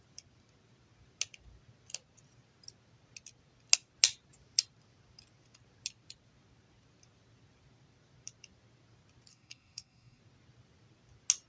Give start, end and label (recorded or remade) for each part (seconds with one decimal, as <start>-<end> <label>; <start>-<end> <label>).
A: 0.0-9.3 recorded; 9.3-10.2 remade; 10.2-11.5 recorded